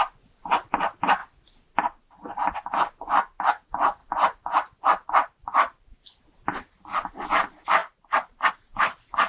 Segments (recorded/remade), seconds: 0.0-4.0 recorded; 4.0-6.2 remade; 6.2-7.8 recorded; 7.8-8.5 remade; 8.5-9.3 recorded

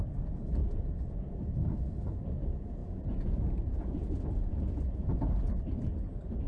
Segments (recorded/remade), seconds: 0.0-2.8 recorded; 2.8-5.6 remade; 5.6-6.5 recorded